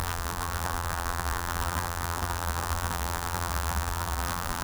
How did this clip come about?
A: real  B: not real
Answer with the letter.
B